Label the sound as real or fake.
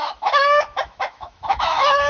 fake